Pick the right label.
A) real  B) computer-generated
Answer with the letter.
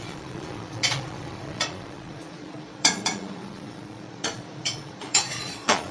B